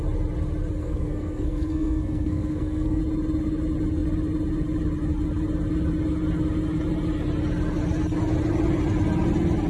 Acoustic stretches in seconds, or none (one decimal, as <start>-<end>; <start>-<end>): 0.0-0.8; 3.0-9.7